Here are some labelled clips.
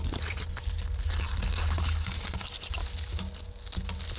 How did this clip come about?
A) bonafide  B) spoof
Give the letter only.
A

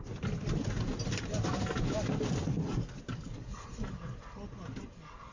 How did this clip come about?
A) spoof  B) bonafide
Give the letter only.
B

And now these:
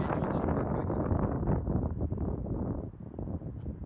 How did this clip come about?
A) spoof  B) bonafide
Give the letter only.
B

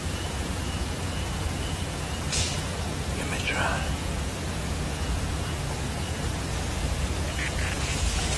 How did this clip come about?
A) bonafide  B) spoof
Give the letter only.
B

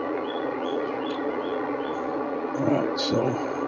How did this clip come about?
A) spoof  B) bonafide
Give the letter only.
A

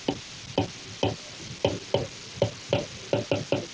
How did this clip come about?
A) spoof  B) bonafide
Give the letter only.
B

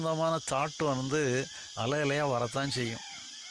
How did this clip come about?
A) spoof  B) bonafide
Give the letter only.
B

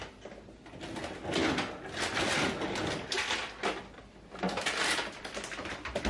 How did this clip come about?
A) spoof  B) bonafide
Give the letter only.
B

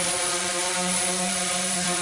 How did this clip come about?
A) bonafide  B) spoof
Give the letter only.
B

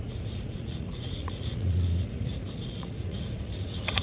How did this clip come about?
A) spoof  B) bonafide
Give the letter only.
A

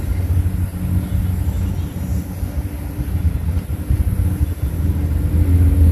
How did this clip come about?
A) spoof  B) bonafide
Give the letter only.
B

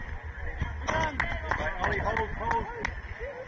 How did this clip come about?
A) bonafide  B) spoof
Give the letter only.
A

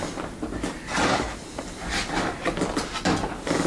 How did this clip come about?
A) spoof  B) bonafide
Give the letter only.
B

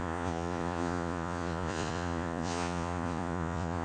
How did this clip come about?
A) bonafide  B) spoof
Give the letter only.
B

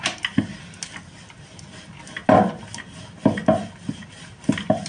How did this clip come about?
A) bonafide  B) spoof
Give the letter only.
A